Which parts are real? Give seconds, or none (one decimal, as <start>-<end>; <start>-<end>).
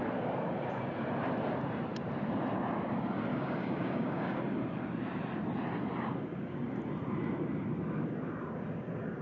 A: 0.0-3.3; 4.4-9.2